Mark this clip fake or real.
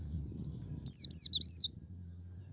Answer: real